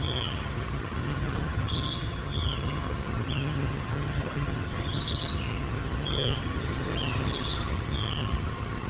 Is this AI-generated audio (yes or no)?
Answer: yes